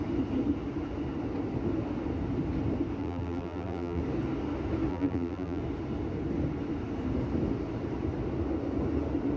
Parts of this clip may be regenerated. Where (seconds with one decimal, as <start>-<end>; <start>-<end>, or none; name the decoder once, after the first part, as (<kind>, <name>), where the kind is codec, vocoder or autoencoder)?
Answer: 3.0-4.0 (vocoder, BigVGAN v2); 4.9-5.6